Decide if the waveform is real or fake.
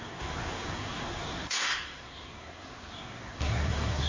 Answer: fake